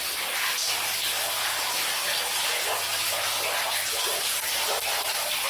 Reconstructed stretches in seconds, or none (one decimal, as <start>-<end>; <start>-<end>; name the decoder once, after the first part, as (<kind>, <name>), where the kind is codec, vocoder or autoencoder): 0.0-2.7 (vocoder, BigVGAN v2); 4.2-5.5